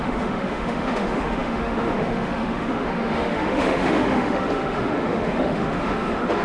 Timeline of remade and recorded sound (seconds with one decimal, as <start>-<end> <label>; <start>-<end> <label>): 0.0-6.4 remade